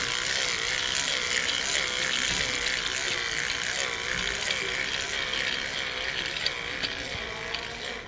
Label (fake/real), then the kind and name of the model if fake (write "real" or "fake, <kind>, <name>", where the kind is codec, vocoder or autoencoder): real